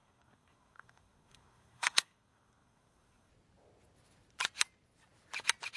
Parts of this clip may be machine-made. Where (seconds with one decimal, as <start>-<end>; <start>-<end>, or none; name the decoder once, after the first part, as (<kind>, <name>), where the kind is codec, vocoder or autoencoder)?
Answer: 0.0-3.3 (codec, SNAC)